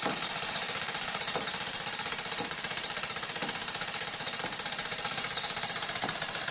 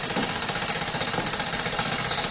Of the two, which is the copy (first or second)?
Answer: first